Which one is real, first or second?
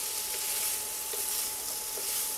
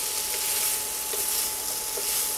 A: second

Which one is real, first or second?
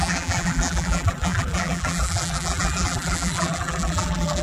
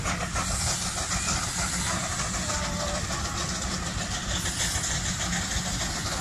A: second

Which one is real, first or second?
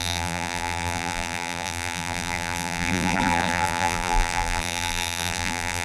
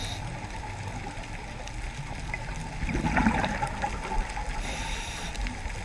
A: second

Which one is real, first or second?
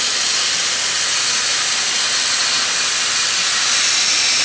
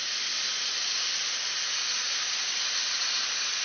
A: first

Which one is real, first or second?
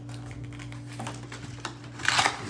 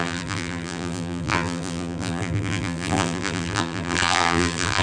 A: first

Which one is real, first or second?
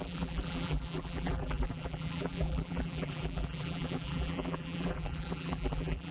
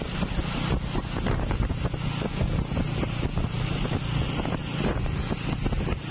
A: second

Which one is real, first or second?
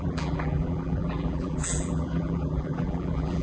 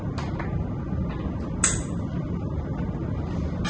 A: second